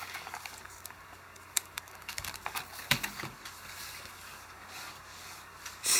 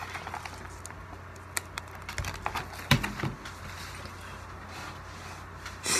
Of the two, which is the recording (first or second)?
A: second